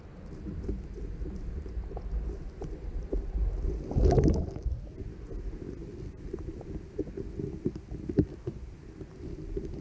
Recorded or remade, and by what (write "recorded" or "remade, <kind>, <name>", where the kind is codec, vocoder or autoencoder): recorded